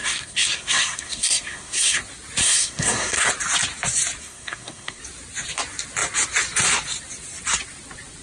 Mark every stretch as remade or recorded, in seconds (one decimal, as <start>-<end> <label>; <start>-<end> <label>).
0.0-2.0 remade; 2.0-2.4 recorded; 2.4-3.3 remade; 3.3-4.2 recorded; 4.2-5.0 remade; 5.0-8.2 recorded